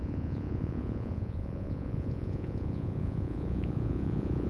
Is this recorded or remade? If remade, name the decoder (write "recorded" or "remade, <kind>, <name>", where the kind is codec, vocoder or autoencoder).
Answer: remade, vocoder, Vocos